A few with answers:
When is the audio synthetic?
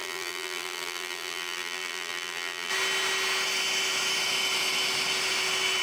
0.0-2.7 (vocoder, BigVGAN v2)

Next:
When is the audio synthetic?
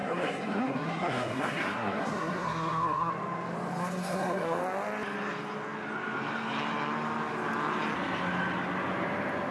0.0-3.1 (codec, SNAC); 3.8-4.6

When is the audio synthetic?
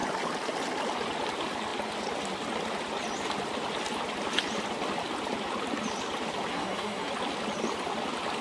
6.5-7.1 (codec, SNAC)